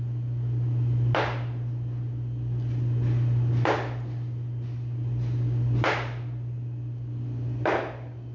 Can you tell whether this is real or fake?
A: real